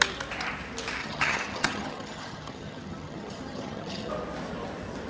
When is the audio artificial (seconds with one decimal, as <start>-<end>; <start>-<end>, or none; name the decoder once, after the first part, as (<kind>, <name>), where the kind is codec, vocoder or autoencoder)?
1.0-4.1 (vocoder, HiFi-GAN)